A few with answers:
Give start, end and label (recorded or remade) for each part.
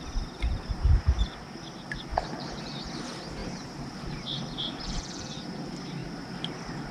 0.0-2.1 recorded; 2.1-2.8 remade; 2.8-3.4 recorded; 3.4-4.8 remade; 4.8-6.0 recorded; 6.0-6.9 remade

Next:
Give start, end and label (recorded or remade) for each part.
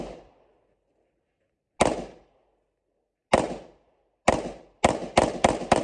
0.0-5.8 recorded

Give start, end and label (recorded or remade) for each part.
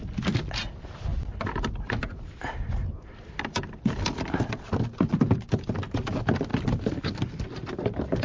0.0-6.5 recorded; 6.5-7.0 remade; 7.0-8.2 recorded